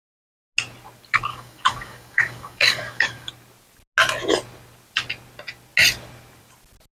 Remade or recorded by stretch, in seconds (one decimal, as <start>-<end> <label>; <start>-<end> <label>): 0.0-1.3 recorded; 1.3-3.3 remade; 3.3-6.9 recorded